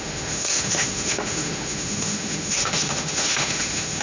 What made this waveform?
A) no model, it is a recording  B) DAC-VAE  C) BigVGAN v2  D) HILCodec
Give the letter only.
B